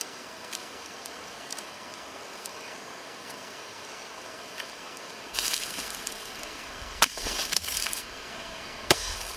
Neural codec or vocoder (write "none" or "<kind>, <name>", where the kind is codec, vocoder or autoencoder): codec, SNAC